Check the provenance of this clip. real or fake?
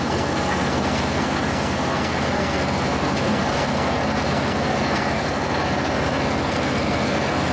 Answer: fake